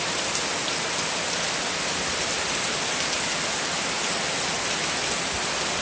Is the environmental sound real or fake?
real